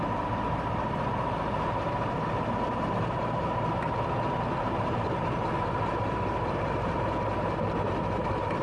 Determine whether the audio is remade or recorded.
remade